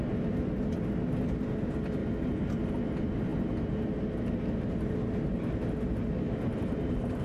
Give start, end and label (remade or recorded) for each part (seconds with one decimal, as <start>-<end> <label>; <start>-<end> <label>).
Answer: 0.0-7.2 recorded